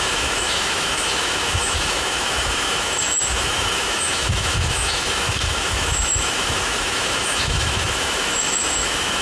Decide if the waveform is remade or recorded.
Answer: remade